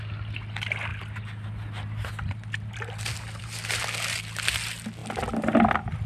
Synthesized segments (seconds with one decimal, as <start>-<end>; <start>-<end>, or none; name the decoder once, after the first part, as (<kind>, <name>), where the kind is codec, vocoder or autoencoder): none